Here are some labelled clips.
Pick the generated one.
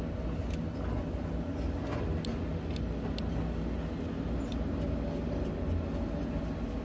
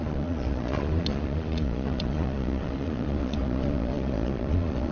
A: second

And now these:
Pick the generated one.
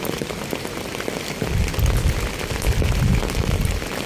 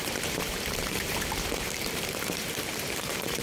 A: second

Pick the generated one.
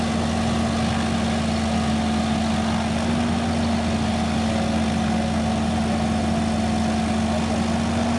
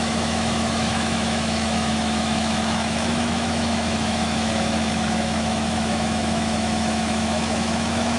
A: second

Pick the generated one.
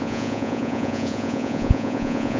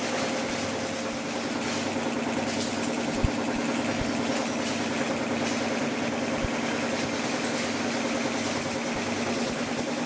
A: first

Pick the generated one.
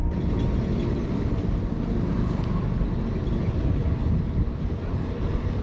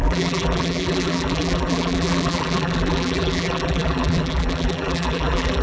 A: second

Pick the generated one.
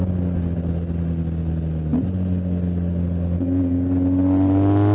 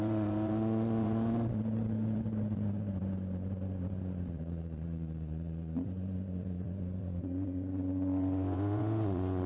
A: second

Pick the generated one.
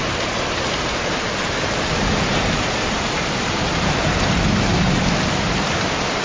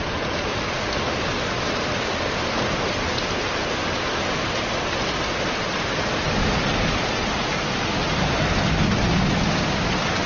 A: first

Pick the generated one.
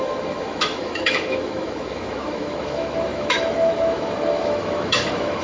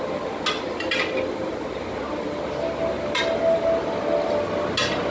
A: first